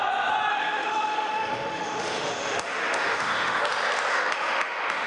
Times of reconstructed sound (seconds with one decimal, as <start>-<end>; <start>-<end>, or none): 0.5-3.6; 4.1-5.1